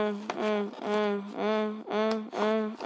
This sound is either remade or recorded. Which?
recorded